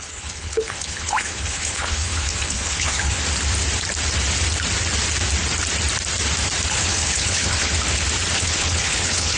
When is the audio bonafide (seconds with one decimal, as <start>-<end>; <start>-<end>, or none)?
3.2-6.7; 7.7-8.4